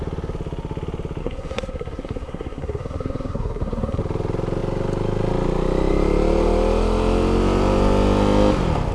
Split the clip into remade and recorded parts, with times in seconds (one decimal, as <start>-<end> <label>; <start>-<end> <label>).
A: 0.0-1.2 recorded; 1.2-4.0 remade; 4.0-8.9 recorded